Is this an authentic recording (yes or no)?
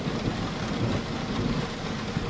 yes